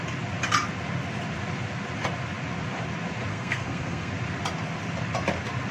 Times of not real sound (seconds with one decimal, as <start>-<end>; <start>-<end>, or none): 3.3-4.1